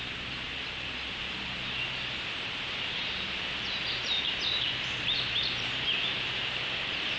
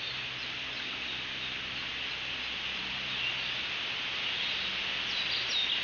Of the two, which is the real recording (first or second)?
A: second